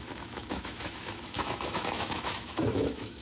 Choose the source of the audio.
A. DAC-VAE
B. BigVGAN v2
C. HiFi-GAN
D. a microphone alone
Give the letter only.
A